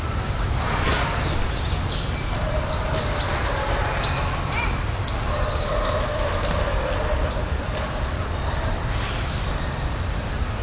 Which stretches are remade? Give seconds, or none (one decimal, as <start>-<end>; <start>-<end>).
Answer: 5.7-6.4